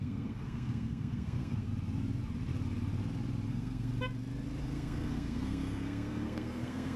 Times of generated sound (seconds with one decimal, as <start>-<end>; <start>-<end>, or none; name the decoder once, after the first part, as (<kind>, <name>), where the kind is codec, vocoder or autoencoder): 0.0-1.7 (codec, SNAC); 3.5-3.9; 4.6-7.0